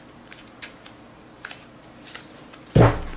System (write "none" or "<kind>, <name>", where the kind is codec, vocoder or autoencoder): none